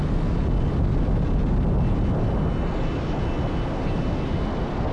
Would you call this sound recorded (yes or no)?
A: yes